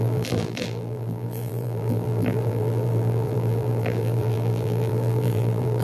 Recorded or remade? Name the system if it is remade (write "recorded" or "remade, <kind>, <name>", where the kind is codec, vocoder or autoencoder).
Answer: remade, vocoder, BigVGAN v2